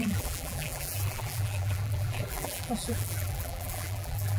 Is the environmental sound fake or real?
fake